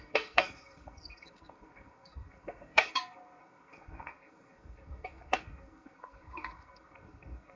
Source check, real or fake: fake